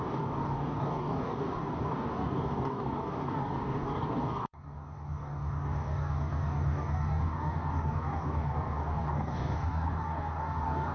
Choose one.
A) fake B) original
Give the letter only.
A